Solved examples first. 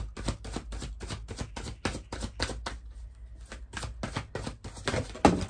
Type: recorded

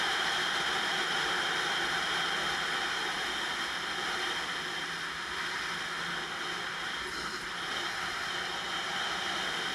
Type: recorded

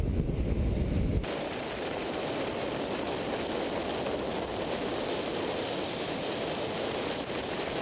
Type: recorded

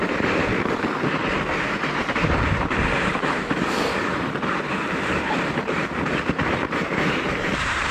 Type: remade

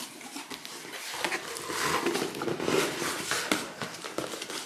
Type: recorded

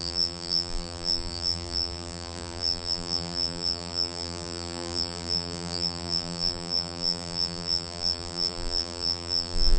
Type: remade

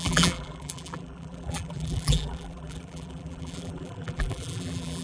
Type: remade